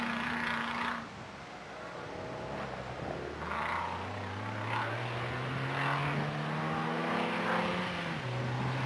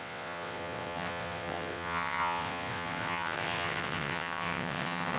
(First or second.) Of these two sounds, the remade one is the second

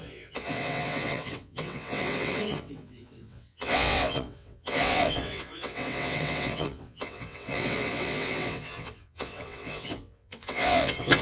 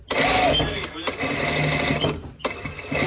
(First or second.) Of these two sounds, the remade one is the first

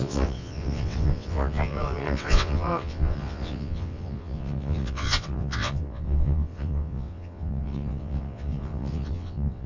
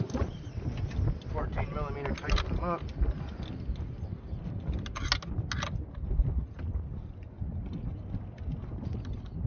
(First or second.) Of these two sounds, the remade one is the first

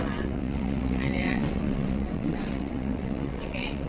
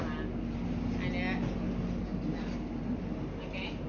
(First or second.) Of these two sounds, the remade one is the first